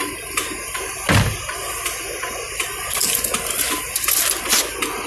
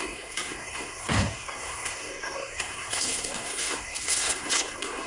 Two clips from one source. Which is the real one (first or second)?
first